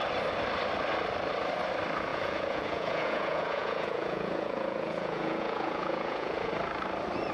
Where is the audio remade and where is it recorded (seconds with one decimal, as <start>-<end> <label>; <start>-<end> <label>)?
0.0-2.1 recorded; 2.1-6.5 remade; 6.5-7.3 recorded